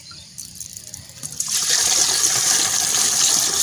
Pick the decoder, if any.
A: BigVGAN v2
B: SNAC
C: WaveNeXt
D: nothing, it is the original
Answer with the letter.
A